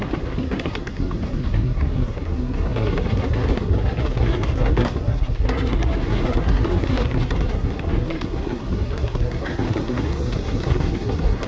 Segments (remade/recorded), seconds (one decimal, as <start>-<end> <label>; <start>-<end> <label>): 0.0-11.5 remade